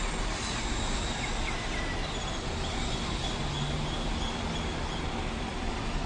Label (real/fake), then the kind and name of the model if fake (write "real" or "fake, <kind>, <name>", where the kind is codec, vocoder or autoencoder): real